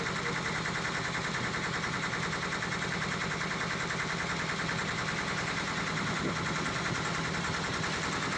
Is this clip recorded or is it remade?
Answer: recorded